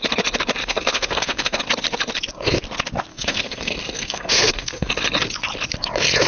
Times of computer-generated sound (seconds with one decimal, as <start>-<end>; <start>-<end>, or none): 0.6-1.6; 3.1-4.9